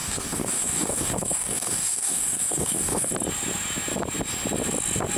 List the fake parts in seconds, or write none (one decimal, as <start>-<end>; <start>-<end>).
0.0-3.1